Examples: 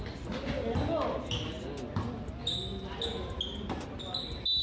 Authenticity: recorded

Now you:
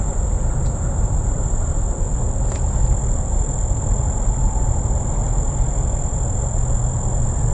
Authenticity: recorded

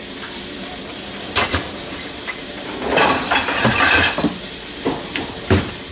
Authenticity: remade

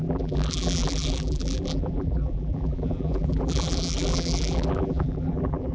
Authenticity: remade